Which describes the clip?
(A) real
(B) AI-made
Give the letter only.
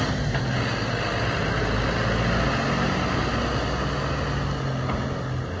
A